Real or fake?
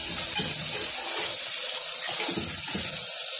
real